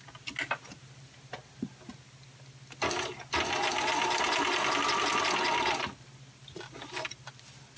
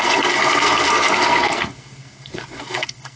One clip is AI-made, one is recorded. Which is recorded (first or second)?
first